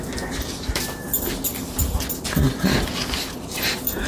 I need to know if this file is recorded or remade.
recorded